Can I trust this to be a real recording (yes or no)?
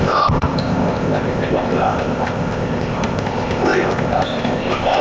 no